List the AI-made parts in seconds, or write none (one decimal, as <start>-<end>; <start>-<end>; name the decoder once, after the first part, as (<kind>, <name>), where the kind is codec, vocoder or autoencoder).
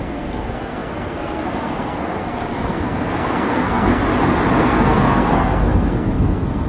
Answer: 0.0-4.0 (codec, SNAC); 4.6-6.7